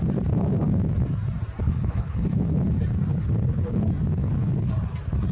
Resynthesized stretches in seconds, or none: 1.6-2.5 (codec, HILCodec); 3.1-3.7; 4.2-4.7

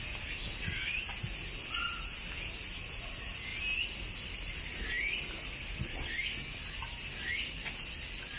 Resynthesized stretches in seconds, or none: none

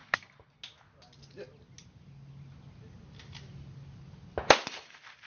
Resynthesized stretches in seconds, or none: none

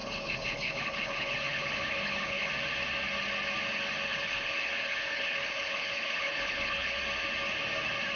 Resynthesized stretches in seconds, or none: 0.0-2.5 (codec, HILCodec); 4.1-7.0

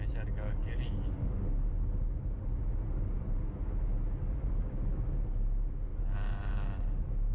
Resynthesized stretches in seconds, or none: none

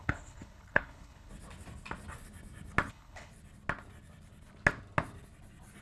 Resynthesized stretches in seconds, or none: 0.0-1.3 (codec, HILCodec); 2.9-3.3

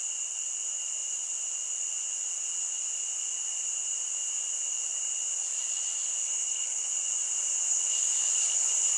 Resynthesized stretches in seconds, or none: 6.2-6.9 (codec, HILCodec); 7.7-9.0